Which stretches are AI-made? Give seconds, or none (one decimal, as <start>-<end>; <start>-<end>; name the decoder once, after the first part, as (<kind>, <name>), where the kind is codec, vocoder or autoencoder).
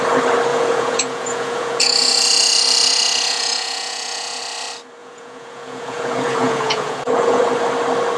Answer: 0.5-4.4 (vocoder, Vocos); 5.0-7.4